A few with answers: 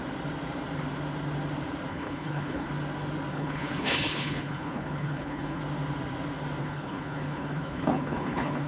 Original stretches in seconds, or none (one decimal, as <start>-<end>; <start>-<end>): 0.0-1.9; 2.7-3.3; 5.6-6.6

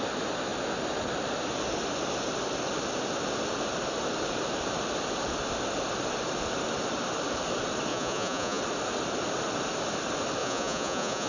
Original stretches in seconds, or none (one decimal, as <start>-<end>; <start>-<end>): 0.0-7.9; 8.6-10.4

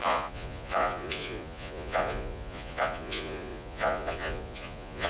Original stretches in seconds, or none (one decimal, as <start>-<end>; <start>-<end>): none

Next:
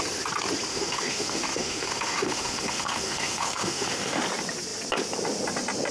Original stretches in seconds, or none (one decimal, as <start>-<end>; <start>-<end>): 0.0-0.7; 4.2-5.9

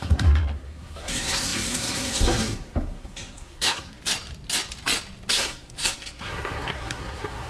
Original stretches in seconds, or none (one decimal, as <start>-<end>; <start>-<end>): 4.0-5.3